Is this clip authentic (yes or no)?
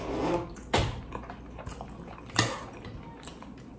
yes